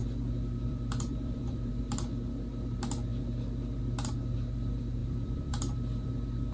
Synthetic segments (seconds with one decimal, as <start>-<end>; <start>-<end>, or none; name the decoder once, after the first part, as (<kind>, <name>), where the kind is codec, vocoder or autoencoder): 0.0-1.7 (vocoder, BigVGAN v2); 5.0-6.1